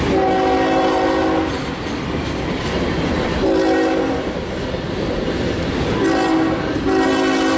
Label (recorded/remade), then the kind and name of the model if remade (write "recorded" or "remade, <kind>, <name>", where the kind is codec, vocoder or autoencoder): recorded